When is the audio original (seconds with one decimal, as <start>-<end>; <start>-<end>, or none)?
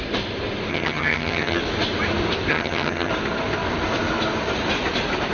0.0-0.7; 1.6-2.5; 3.1-5.3